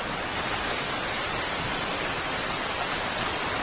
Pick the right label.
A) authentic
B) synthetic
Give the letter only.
B